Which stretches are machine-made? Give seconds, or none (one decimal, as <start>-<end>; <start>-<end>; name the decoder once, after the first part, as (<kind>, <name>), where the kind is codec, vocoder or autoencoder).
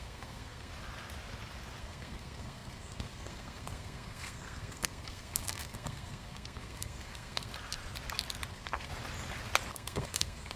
0.0-0.7 (codec, SNAC); 1.8-7.5; 8.5-8.9; 9.7-10.6